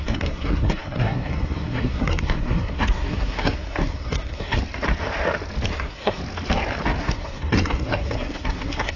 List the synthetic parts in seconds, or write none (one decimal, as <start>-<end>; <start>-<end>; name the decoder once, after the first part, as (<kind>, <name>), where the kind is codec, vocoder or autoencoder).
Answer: 0.0-4.6 (codec, SNAC); 5.7-6.2; 7.0-9.0